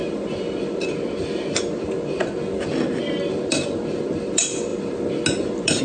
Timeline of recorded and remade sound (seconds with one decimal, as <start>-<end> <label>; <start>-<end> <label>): 0.0-5.8 recorded